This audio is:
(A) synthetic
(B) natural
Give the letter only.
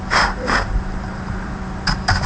B